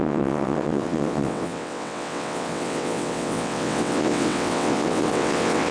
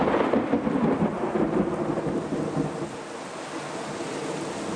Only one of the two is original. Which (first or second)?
second